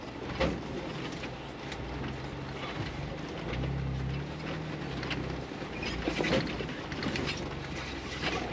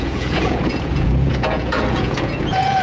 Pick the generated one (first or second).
second